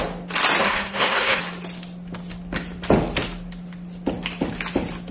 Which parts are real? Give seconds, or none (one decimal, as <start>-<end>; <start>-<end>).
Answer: 0.0-0.6; 1.4-5.1